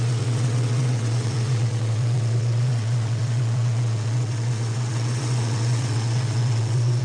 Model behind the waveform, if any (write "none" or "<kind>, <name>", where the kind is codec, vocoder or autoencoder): vocoder, WaveNeXt